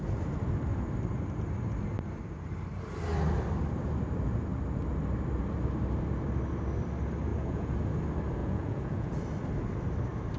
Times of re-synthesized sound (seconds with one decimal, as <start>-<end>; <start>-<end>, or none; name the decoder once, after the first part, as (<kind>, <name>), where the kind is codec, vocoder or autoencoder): 7.3-7.8 (vocoder, Vocos); 8.4-9.2